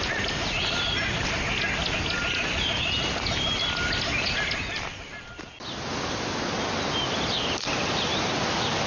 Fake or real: real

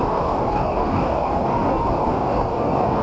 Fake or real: fake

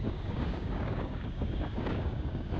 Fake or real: fake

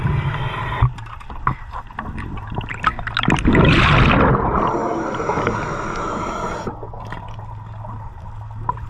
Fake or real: real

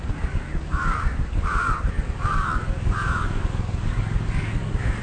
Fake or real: fake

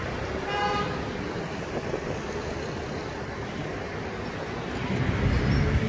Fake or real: real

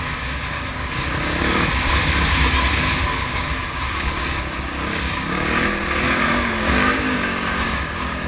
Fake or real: fake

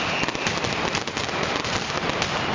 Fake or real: real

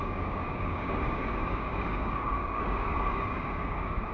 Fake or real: fake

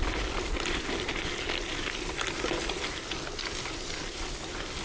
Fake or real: real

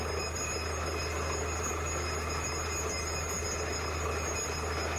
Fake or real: real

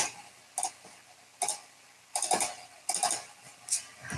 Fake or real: real